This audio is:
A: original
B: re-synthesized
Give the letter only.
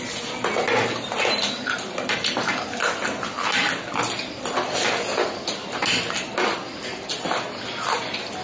A